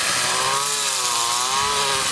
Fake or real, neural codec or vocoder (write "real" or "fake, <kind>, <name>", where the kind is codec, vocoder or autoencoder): real